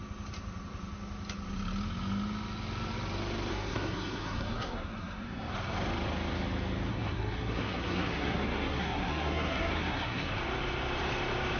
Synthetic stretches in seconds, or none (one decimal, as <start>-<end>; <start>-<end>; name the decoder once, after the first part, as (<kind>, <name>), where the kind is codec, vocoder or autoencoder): 3.5-5.5 (codec, SNAC); 6.9-10.3